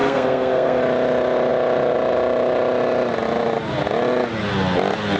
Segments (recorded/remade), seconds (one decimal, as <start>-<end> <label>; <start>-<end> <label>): 0.0-0.8 remade; 0.8-5.2 recorded